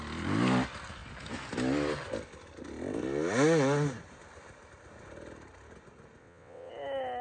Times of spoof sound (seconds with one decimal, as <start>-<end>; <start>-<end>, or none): 6.2-6.7